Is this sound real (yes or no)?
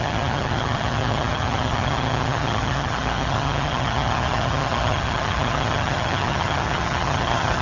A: no